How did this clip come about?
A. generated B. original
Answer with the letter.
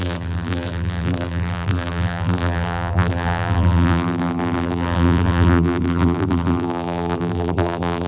A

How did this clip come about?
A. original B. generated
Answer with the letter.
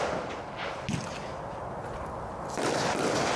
A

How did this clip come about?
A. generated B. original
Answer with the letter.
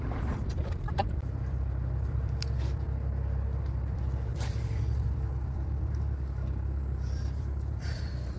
A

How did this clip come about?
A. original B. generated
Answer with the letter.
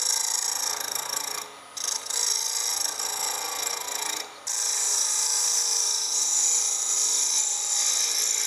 A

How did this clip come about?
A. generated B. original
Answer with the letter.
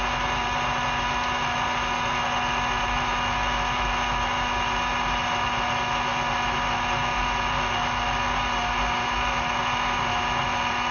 B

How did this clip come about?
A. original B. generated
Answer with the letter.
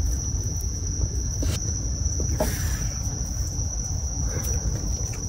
A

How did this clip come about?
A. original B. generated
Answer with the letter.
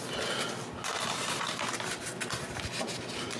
A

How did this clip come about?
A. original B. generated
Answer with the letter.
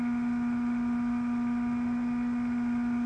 A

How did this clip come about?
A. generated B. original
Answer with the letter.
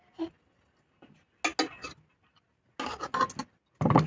B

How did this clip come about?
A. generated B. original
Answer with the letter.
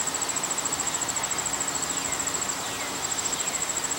B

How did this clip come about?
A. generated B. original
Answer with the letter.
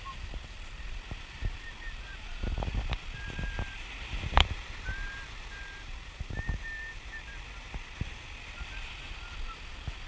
A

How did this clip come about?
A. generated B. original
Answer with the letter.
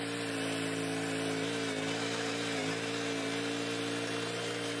B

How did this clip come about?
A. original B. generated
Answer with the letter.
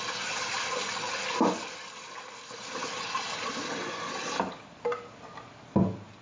A